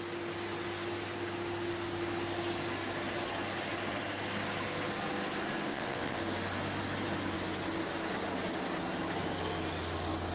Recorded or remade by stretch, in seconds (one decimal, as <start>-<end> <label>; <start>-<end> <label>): 0.0-5.7 recorded; 5.7-6.2 remade; 6.2-10.3 recorded